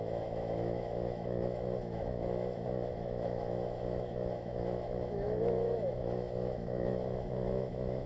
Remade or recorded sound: remade